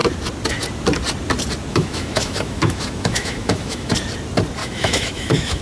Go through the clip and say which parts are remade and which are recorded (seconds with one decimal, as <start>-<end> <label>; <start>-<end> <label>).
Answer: 0.0-1.7 recorded; 1.7-3.9 remade; 3.9-4.6 recorded; 4.6-5.6 remade